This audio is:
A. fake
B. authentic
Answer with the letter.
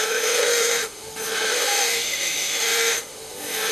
A